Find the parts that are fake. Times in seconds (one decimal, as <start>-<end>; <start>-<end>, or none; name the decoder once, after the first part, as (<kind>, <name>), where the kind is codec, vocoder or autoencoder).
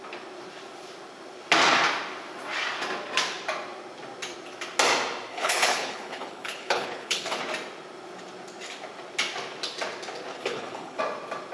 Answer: 5.3-7.4 (codec, HILCodec); 10.3-11.0